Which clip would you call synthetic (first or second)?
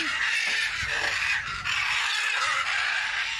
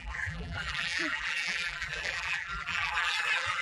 second